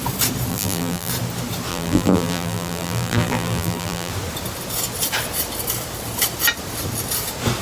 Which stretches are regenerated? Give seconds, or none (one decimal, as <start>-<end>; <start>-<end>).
0.5-1.1; 1.7-4.1